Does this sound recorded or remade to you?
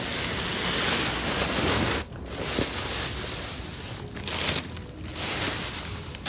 recorded